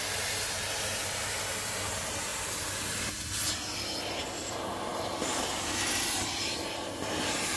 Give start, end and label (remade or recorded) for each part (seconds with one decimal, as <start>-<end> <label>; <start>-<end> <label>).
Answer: 0.0-7.6 recorded